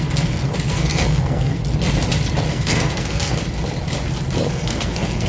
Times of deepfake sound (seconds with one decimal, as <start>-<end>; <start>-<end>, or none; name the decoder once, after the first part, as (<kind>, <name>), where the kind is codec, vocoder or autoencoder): 0.0-1.6 (codec, SNAC); 2.5-3.4; 4.5-5.3